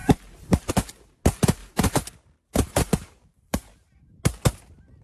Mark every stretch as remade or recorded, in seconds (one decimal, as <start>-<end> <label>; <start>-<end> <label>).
0.0-0.7 remade; 0.7-1.6 recorded; 1.6-4.0 remade; 4.0-5.0 recorded